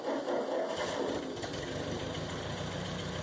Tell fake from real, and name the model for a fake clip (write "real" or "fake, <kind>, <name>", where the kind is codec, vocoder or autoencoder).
real